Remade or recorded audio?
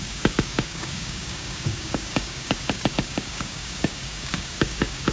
remade